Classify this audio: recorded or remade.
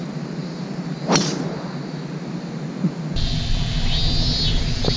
recorded